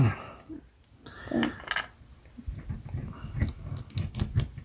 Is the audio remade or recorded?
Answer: recorded